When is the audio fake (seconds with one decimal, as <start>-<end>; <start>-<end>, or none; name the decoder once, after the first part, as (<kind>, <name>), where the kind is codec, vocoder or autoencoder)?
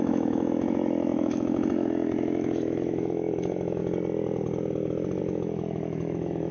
0.0-3.8 (autoencoder, DAC-VAE); 5.2-6.5